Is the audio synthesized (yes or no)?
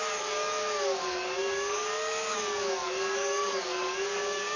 yes